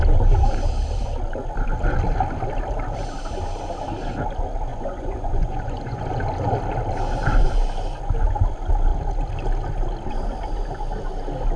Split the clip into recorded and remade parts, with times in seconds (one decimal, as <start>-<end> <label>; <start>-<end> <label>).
0.0-4.7 recorded; 4.7-6.0 remade; 6.0-11.6 recorded